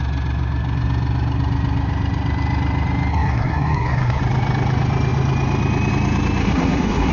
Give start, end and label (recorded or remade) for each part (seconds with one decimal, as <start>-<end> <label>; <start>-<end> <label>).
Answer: 0.0-3.1 recorded; 3.1-4.2 remade; 4.2-6.4 recorded; 6.4-7.1 remade